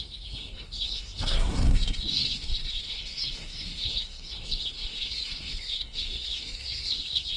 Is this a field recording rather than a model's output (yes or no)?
no